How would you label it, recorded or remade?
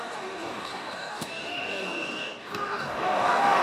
remade